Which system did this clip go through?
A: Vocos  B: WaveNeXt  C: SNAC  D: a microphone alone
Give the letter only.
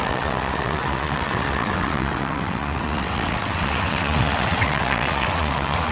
B